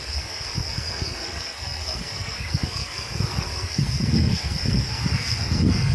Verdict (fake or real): fake